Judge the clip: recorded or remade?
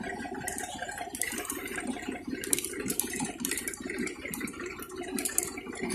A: remade